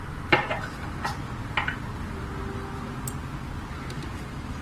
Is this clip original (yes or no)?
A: yes